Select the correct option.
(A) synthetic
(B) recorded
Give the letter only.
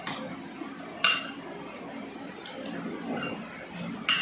B